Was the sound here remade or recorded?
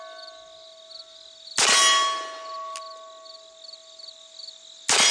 recorded